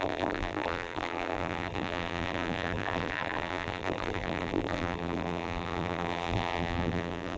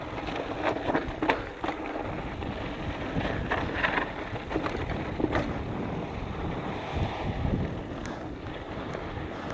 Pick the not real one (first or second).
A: first